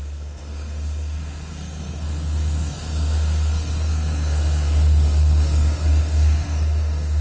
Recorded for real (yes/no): no